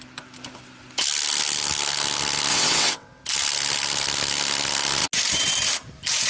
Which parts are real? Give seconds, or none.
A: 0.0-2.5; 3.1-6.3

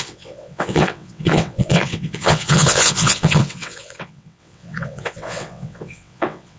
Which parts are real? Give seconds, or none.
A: none

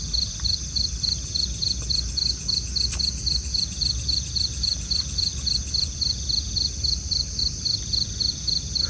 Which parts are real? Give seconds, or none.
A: 0.0-8.9

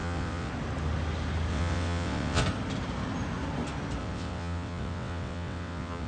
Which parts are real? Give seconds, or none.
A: 0.5-1.5; 2.4-4.0

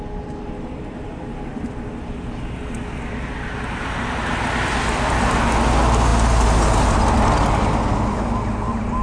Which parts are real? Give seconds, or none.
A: 0.0-9.0

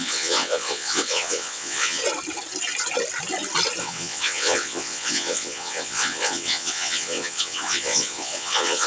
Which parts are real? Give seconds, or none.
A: 2.0-3.8

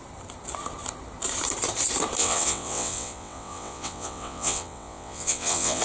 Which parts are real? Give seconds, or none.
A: 0.0-2.2